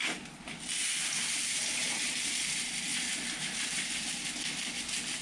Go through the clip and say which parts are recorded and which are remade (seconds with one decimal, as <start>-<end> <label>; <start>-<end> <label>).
0.0-1.8 recorded; 1.8-2.3 remade; 2.3-2.9 recorded; 2.9-3.9 remade; 3.9-5.2 recorded